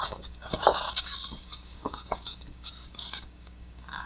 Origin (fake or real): fake